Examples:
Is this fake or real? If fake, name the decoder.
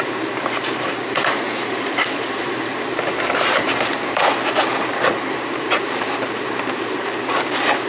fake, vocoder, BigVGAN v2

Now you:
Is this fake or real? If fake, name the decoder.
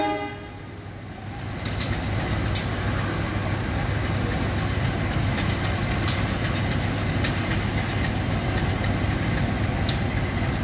real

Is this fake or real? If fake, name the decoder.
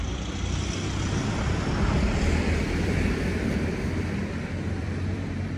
fake, vocoder, BigVGAN v2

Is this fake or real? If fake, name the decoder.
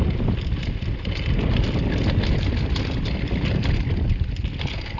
real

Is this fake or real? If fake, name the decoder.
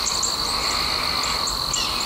real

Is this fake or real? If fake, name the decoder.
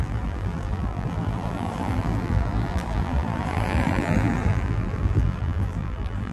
fake, vocoder, BigVGAN v2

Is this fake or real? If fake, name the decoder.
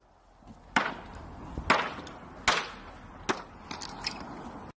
real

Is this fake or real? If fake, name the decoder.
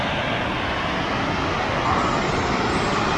real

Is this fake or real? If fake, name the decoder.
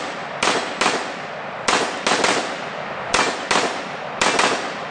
real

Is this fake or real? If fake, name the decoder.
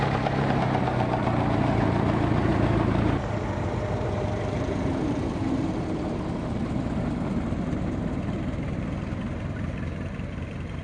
fake, vocoder, BigVGAN v2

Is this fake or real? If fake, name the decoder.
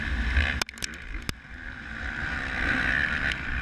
real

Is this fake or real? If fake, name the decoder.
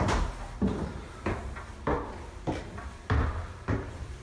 fake, vocoder, BigVGAN v2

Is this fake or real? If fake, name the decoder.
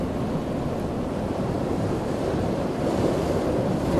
real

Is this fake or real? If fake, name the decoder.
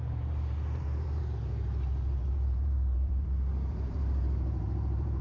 fake, vocoder, BigVGAN v2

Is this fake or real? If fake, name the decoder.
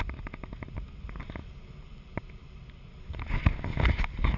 real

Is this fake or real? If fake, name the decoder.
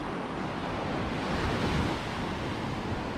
real